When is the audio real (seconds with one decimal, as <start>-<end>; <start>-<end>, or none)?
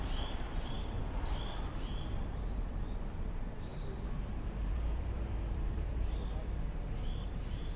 1.0-1.7